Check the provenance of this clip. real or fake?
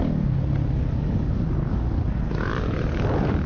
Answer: real